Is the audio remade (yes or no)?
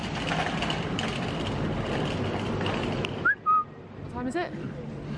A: no